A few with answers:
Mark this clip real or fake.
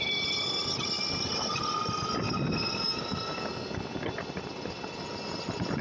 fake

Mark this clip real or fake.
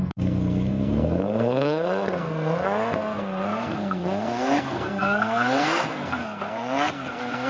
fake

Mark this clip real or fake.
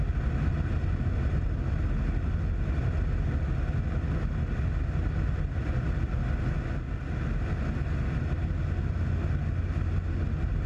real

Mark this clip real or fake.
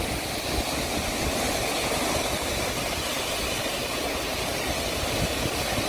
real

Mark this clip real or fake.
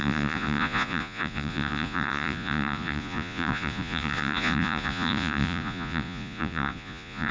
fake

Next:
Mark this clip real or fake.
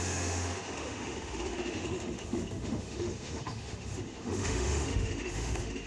fake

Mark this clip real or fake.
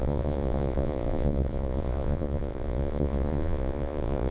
fake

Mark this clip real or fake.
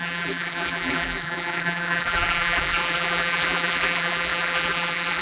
fake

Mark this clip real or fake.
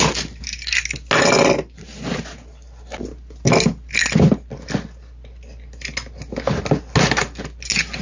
real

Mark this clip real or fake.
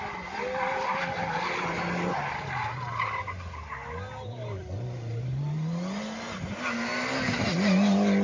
real